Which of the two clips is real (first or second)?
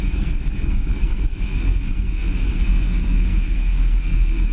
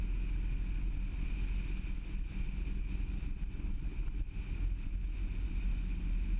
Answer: second